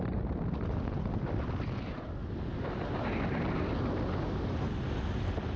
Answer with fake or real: real